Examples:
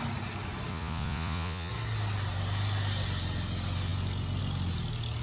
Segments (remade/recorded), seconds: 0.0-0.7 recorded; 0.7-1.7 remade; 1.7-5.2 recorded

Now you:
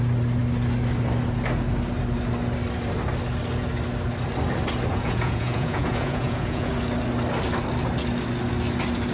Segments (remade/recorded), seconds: 0.0-4.9 recorded; 4.9-6.7 remade; 6.7-9.1 recorded